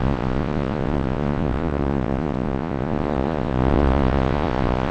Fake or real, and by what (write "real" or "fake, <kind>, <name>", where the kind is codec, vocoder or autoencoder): fake, vocoder, Vocos